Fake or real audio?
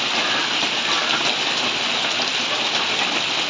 real